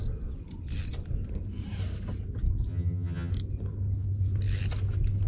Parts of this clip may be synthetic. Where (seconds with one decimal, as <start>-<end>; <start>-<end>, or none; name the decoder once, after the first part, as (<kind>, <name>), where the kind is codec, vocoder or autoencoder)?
2.7-3.3 (vocoder, HiFi-GAN)